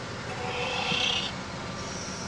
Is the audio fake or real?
real